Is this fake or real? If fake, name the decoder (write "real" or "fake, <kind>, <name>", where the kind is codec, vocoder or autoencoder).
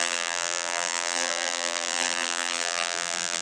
fake, vocoder, BigVGAN v2